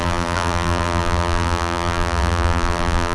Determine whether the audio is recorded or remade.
remade